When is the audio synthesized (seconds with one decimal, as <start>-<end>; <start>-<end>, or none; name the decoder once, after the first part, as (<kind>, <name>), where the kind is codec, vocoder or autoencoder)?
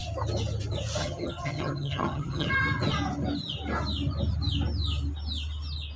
1.0-2.5 (vocoder, HiFi-GAN)